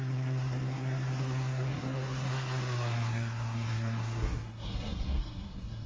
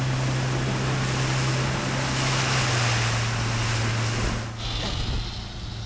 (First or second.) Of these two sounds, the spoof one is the first